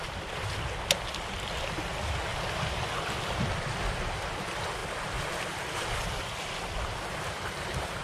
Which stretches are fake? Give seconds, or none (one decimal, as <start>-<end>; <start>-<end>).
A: none